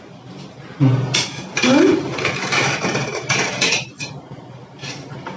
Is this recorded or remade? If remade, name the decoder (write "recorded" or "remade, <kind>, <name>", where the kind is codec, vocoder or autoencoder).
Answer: recorded